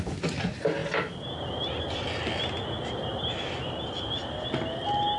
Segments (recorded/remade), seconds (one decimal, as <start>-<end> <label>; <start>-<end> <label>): 0.0-5.2 recorded